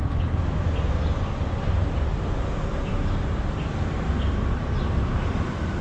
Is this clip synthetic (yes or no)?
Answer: no